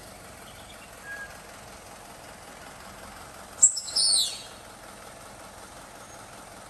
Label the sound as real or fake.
real